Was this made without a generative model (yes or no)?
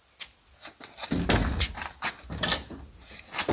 yes